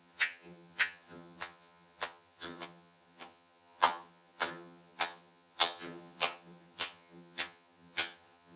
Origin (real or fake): fake